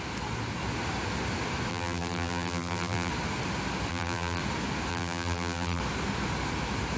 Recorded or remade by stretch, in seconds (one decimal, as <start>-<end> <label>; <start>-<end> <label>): 0.0-1.7 recorded; 1.7-3.1 remade; 3.1-3.9 recorded; 3.9-4.4 remade; 4.4-4.9 recorded; 4.9-5.8 remade; 5.8-7.0 recorded